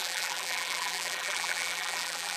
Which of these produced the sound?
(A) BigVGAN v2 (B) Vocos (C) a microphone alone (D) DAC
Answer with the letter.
A